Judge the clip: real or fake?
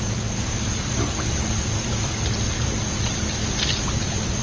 real